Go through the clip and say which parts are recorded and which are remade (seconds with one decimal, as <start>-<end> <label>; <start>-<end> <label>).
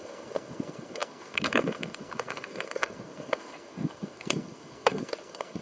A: 0.0-5.6 remade